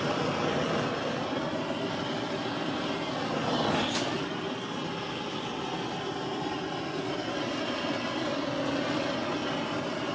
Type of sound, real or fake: real